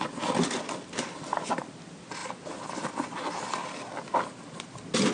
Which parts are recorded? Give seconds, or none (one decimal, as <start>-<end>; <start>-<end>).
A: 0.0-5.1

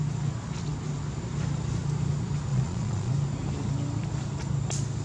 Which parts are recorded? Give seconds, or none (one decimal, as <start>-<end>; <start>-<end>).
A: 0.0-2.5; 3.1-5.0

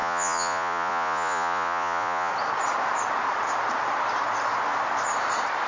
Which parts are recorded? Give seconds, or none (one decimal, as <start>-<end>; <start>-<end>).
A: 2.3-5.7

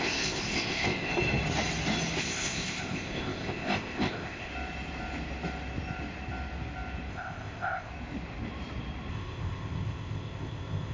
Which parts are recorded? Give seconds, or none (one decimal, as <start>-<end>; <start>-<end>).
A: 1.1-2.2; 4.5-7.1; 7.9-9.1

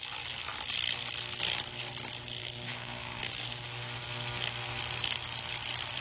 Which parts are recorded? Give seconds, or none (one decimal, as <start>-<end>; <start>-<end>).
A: 0.0-2.4; 3.2-6.0